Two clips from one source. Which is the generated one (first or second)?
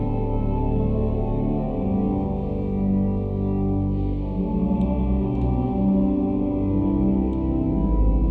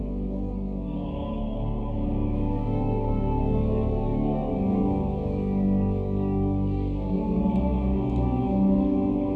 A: second